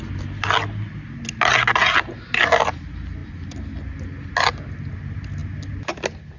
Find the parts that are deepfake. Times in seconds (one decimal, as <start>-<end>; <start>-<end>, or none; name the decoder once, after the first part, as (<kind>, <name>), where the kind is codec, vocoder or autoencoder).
none